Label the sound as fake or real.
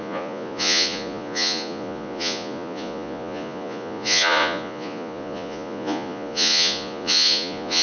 fake